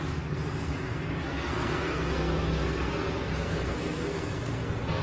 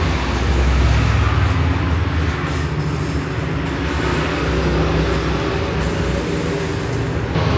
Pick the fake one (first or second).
first